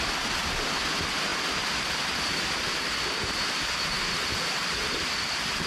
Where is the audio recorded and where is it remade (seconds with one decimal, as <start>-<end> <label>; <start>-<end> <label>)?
0.0-5.7 recorded